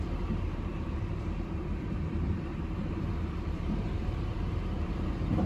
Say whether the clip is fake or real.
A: fake